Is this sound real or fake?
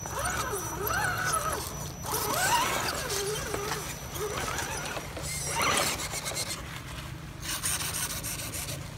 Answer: real